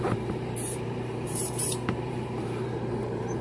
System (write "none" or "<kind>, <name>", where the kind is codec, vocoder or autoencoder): vocoder, BigVGAN v2